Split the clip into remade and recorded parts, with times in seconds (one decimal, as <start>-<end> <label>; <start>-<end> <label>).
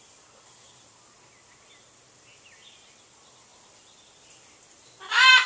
0.0-5.5 recorded